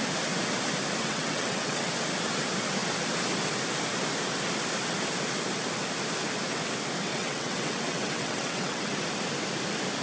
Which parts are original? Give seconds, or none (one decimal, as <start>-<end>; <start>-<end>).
0.0-1.0; 1.9-7.1; 8.9-10.0